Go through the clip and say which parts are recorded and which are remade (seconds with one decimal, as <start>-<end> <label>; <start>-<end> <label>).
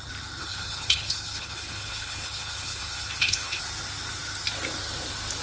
0.0-0.4 recorded; 0.4-3.6 remade; 3.6-5.4 recorded